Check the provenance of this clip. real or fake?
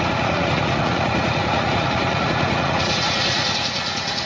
fake